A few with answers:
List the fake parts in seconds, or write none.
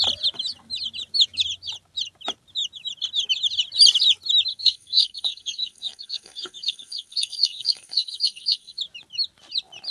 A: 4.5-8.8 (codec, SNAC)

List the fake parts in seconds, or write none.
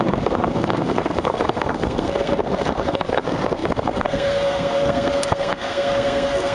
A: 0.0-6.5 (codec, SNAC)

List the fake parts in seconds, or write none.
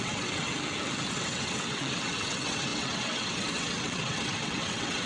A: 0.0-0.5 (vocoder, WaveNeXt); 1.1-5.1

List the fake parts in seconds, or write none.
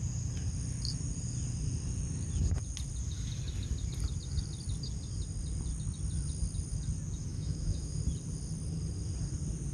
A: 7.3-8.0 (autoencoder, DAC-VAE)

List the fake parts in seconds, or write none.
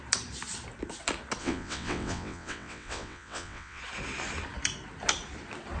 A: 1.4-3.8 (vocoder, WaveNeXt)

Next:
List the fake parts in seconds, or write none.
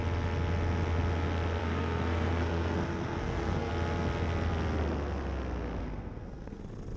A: 1.6-3.7 (codec, SNAC); 5.8-6.6